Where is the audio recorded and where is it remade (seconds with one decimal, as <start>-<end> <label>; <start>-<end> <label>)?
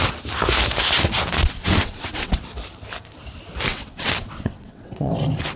0.0-1.4 recorded; 1.4-2.4 remade; 2.4-3.7 recorded; 3.7-5.1 remade; 5.1-5.6 recorded